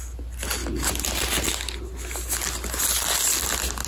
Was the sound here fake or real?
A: real